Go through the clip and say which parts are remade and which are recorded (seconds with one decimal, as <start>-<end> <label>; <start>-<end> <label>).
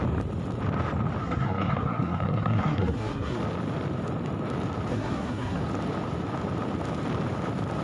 0.0-1.2 recorded; 1.2-3.4 remade; 3.4-4.9 recorded; 4.9-5.6 remade; 5.6-7.8 recorded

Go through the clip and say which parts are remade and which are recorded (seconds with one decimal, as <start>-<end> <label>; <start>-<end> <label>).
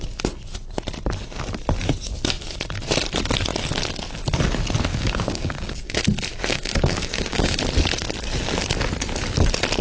0.0-4.9 recorded; 4.9-6.0 remade; 6.0-6.5 recorded; 6.5-7.6 remade; 7.6-9.8 recorded